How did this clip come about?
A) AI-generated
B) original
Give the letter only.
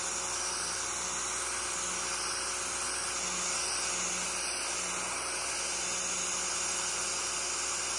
B